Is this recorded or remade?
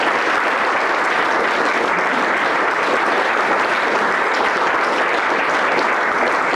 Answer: recorded